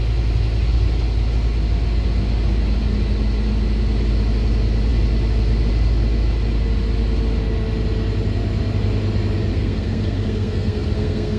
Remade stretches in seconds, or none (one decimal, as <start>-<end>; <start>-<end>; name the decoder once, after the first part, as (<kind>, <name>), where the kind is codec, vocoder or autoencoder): 9.5-11.4 (codec, SNAC)